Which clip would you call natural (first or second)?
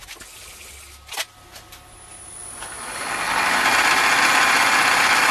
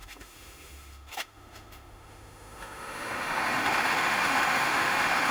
first